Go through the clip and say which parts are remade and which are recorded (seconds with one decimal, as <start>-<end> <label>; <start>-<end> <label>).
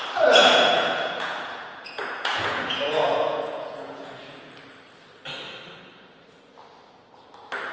0.0-0.4 recorded; 0.4-4.5 remade; 4.5-7.7 recorded